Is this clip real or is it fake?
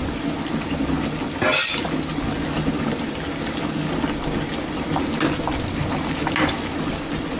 real